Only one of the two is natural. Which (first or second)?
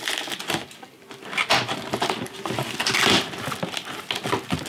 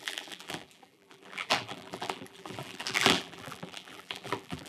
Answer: first